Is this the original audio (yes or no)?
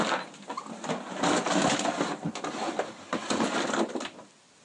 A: yes